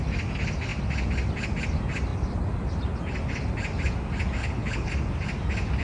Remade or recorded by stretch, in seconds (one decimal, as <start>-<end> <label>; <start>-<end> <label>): 0.0-4.4 recorded; 4.4-4.9 remade; 4.9-5.8 recorded